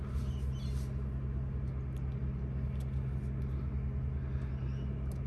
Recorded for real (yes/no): yes